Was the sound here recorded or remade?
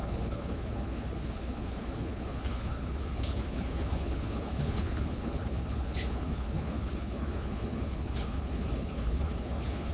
remade